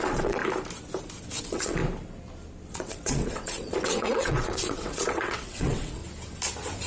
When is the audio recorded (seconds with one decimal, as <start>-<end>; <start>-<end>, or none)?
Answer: 0.4-1.4; 1.8-2.7; 6.0-6.9